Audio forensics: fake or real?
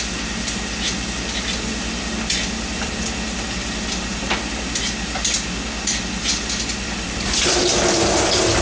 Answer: real